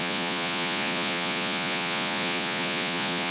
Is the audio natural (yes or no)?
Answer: no